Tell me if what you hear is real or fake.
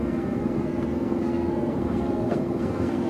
fake